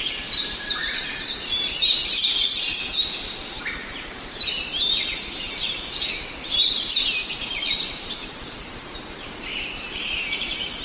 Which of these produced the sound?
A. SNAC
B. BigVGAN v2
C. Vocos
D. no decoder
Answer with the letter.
B